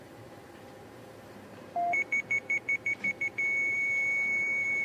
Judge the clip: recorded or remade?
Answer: remade